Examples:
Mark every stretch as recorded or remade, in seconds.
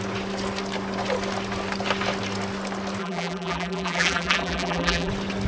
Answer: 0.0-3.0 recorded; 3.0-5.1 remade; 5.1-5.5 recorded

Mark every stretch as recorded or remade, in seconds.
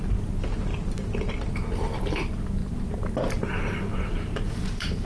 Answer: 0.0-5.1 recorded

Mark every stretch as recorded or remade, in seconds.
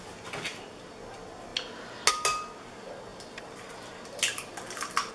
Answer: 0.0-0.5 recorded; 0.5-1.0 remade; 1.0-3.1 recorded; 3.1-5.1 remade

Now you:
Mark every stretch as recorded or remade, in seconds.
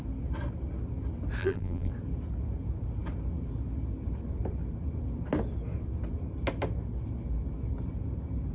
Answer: 0.0-1.4 recorded; 1.4-1.9 remade; 1.9-8.5 recorded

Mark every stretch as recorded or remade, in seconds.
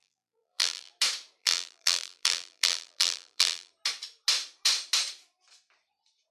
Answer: 0.0-0.9 remade; 0.9-1.4 recorded; 1.4-3.7 remade; 3.7-6.3 recorded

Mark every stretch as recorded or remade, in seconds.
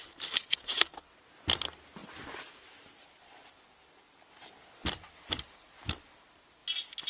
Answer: 0.0-6.6 remade; 6.6-7.1 recorded